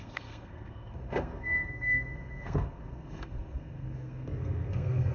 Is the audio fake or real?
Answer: fake